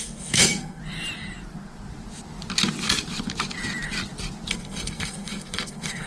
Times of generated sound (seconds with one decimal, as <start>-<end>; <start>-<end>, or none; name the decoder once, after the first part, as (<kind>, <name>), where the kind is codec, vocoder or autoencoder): 0.0-0.8 (codec, SNAC); 4.5-6.1